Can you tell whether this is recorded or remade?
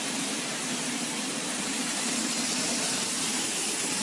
remade